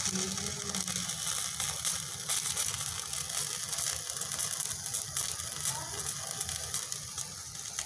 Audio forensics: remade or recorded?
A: recorded